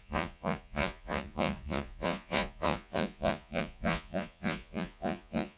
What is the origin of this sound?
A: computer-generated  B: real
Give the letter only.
A